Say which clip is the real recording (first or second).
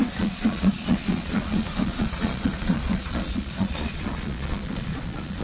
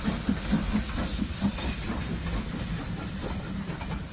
second